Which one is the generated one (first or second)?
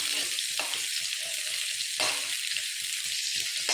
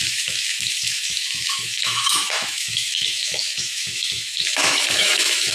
second